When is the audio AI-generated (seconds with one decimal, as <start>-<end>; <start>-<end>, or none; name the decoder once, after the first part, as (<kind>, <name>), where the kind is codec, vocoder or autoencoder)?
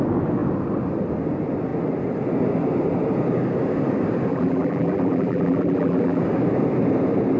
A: 4.3-6.2 (vocoder, BigVGAN v2)